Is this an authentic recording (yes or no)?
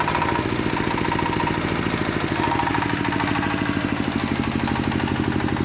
yes